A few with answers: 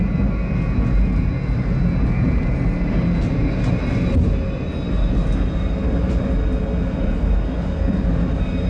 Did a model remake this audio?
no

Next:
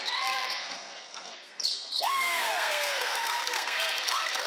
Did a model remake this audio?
yes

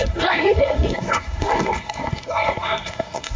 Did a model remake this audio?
yes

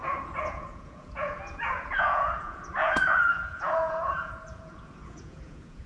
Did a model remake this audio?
yes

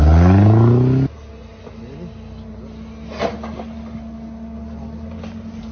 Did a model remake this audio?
no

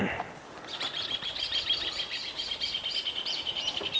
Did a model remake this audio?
no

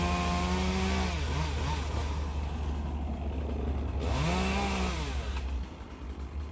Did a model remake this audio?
no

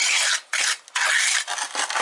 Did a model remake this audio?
no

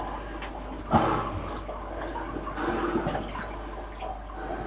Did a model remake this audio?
no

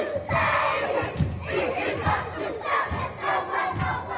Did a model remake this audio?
no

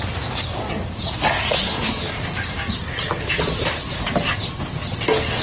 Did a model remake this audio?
no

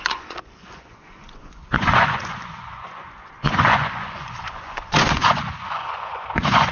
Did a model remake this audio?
yes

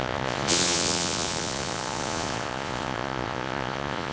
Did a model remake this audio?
yes